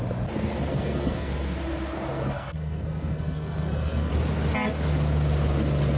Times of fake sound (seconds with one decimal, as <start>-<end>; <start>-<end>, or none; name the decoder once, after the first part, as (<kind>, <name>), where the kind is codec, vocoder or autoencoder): 0.7-1.3 (codec, SNAC); 2.1-4.1